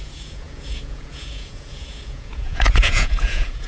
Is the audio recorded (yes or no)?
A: no